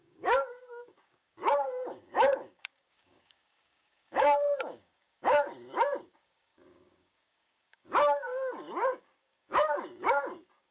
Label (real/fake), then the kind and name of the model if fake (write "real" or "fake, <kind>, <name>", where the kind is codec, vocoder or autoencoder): fake, codec, DAC